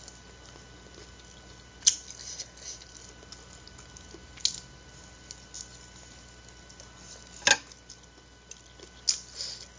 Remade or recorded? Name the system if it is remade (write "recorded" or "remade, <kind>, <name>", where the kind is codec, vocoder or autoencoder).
recorded